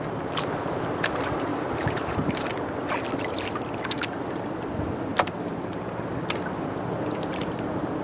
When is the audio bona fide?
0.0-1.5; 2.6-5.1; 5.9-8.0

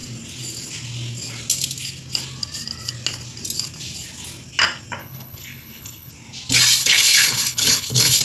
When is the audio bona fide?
0.0-5.0; 6.1-6.8

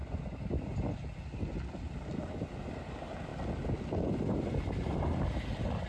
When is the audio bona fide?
0.0-5.9

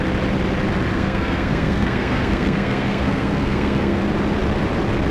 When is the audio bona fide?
0.0-0.9; 4.0-5.1

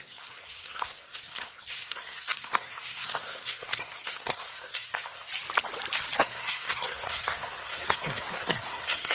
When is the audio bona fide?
5.3-6.2

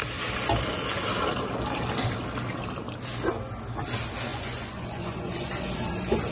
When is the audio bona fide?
0.0-4.3; 5.5-6.3